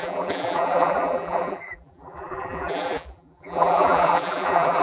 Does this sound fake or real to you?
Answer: fake